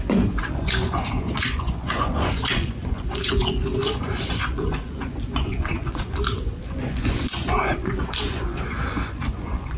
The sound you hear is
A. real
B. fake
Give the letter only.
B